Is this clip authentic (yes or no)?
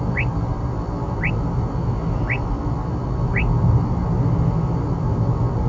yes